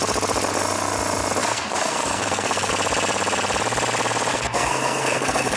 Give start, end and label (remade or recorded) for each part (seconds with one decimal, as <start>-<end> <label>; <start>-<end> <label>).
0.0-1.4 recorded; 1.4-2.7 remade; 2.7-4.3 recorded; 4.3-5.6 remade